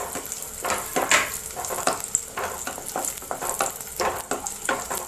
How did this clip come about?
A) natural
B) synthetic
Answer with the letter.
A